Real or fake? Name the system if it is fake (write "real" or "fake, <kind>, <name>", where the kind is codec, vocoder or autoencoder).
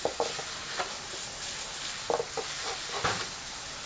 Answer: real